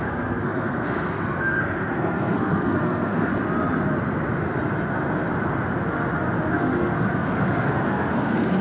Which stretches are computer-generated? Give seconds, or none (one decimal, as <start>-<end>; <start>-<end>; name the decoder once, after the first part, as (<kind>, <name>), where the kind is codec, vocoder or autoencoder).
0.0-3.3 (codec, SNAC); 6.5-8.6